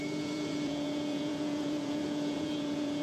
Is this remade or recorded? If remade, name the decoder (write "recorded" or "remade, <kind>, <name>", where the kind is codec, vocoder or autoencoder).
remade, vocoder, Vocos